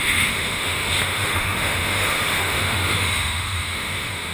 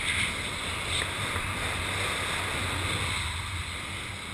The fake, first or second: first